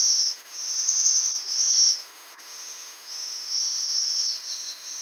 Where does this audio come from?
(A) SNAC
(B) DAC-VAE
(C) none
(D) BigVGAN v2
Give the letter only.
B